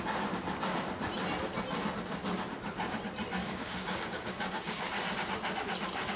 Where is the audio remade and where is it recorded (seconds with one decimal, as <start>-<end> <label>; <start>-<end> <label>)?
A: 0.0-3.4 recorded; 3.4-4.9 remade; 4.9-6.2 recorded